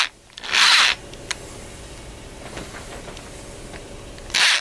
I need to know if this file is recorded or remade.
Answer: recorded